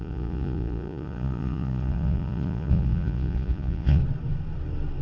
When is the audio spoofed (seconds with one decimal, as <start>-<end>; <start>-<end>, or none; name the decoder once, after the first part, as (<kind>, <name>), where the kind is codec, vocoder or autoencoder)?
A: 0.0-4.0 (vocoder, Vocos)